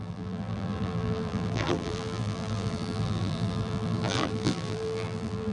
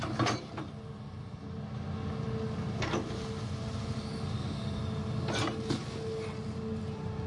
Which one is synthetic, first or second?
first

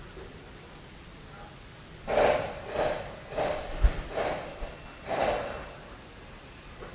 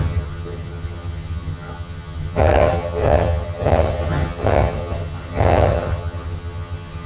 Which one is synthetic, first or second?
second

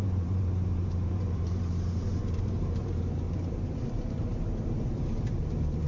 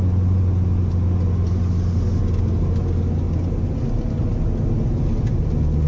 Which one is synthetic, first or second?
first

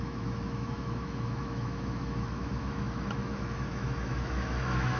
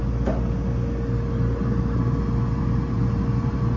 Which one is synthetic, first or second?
first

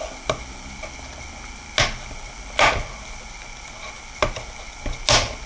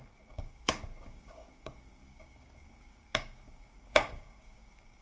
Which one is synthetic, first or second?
second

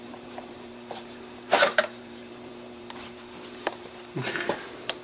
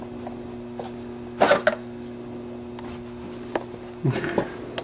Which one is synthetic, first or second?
first